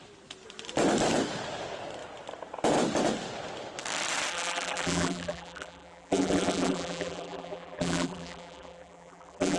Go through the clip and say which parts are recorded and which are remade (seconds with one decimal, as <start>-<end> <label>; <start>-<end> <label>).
0.0-4.3 recorded; 4.3-9.6 remade